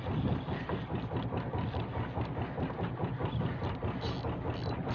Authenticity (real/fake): real